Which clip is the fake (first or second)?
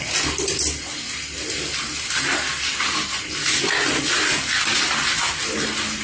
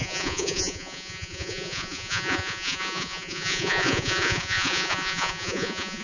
second